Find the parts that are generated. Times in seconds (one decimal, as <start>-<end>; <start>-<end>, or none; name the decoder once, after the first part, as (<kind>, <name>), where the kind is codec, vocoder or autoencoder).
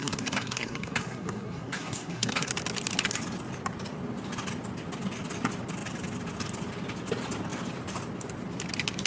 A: 0.0-2.5 (codec, SNAC)